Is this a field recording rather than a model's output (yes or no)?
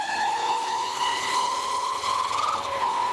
no